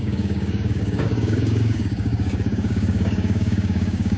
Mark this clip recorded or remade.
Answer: remade